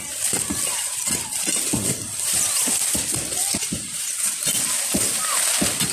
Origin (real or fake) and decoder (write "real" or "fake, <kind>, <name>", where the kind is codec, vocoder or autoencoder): real